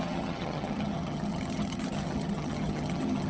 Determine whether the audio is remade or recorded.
remade